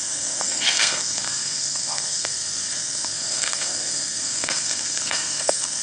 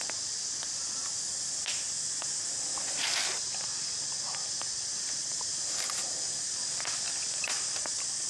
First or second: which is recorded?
second